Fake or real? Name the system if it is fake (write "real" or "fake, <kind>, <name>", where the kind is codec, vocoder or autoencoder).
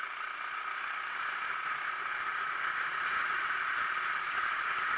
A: fake, vocoder, BigVGAN v2